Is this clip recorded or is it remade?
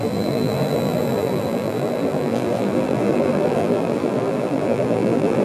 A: remade